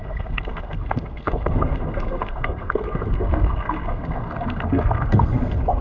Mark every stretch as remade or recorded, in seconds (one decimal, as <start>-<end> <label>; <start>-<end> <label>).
0.0-5.8 remade

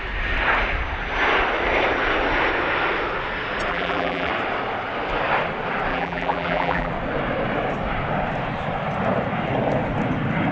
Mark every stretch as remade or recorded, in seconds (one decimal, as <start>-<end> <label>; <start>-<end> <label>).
0.0-3.7 recorded; 3.7-4.3 remade; 4.3-5.9 recorded; 5.9-6.9 remade; 6.9-10.5 recorded

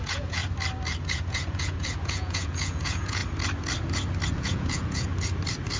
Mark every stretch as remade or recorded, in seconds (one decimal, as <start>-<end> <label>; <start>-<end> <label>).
0.0-0.4 remade; 0.4-1.0 recorded; 1.0-3.2 remade; 3.2-4.3 recorded; 4.3-5.1 remade; 5.1-5.8 recorded

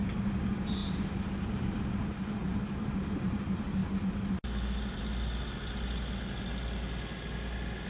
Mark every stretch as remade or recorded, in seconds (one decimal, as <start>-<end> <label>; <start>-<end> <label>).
0.0-7.9 recorded

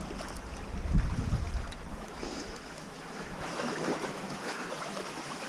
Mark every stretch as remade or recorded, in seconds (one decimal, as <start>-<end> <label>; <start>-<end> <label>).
0.0-1.9 recorded; 1.9-5.5 remade

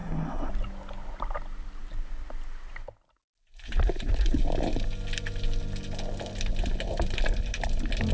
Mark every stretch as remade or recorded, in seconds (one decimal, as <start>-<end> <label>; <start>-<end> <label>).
0.0-0.5 remade; 0.5-8.1 recorded

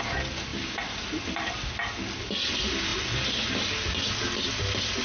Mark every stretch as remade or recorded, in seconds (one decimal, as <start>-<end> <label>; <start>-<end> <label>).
0.0-0.5 recorded; 0.5-1.7 remade; 1.7-5.0 recorded

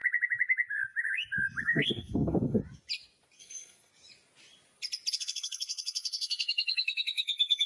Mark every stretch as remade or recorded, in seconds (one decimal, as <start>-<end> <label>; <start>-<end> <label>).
0.0-1.6 recorded; 1.6-2.6 remade; 2.6-3.4 recorded; 3.4-3.9 remade; 3.9-5.1 recorded; 5.1-7.7 remade